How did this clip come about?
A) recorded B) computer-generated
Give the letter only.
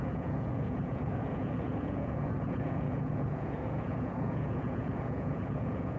B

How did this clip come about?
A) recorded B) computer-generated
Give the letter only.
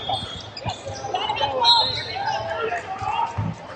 A